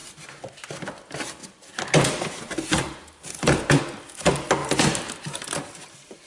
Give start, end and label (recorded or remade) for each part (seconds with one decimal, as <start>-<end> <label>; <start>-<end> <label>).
0.0-0.5 remade; 0.5-1.4 recorded; 1.4-3.8 remade; 3.8-4.6 recorded; 4.6-6.3 remade